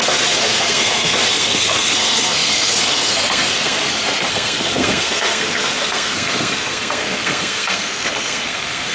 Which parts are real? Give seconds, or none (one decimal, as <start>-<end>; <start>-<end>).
3.8-4.3